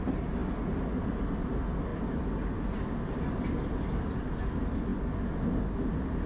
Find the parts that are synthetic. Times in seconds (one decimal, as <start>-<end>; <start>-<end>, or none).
none